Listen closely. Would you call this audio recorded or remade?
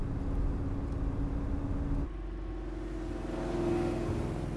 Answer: recorded